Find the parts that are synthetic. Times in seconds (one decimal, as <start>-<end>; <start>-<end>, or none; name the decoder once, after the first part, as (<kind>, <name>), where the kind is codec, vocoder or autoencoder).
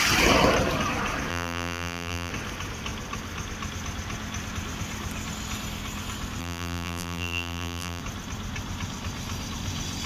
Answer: 1.3-2.3 (vocoder, BigVGAN v2); 6.4-8.0